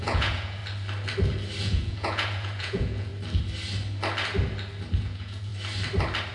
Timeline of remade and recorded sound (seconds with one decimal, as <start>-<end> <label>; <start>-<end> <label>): 0.0-0.6 remade; 0.6-1.6 recorded; 1.6-3.1 remade; 3.1-5.0 recorded; 5.0-5.5 remade; 5.5-6.3 recorded